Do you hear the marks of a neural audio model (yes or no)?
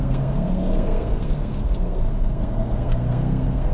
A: yes